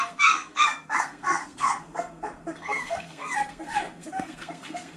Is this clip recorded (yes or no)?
no